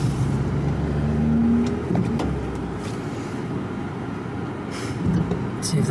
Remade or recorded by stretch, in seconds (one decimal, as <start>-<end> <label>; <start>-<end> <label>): 0.0-5.9 recorded